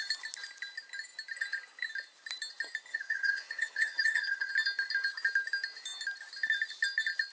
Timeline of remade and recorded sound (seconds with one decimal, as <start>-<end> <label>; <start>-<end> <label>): 0.0-2.9 recorded; 2.9-4.5 remade; 4.5-7.3 recorded